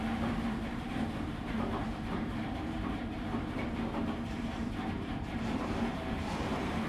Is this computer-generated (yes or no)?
yes